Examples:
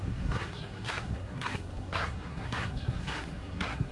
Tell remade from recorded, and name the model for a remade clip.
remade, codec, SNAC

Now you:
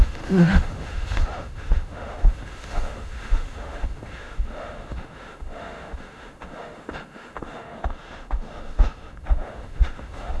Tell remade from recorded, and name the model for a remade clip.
remade, autoencoder, DAC-VAE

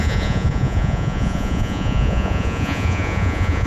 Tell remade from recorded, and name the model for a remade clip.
remade, vocoder, Vocos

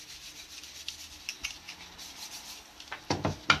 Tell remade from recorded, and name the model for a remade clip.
recorded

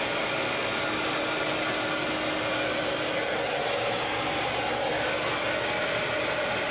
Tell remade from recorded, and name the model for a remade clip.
recorded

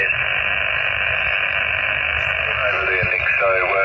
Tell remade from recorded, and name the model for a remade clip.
recorded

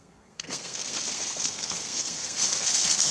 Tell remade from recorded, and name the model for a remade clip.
remade, codec, SNAC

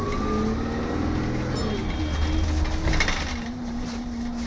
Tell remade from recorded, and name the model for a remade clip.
recorded